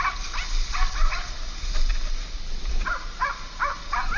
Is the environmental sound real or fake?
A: real